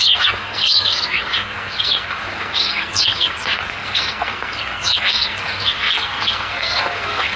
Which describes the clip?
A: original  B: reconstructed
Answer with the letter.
B